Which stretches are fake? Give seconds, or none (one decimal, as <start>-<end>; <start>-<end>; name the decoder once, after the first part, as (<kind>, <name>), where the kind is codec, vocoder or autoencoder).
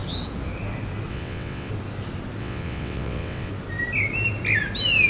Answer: 1.1-1.7 (vocoder, WaveNeXt); 2.4-3.5